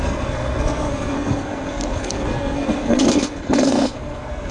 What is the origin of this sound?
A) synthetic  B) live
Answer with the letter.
A